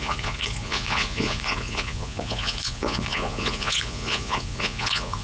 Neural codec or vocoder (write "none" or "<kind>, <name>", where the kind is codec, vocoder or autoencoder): vocoder, Vocos